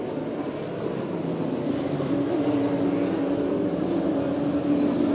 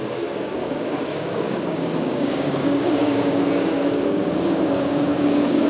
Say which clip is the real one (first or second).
first